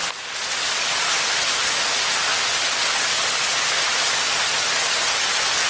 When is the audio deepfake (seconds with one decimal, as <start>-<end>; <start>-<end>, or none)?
none